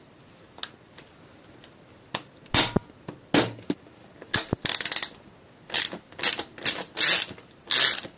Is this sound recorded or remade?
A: recorded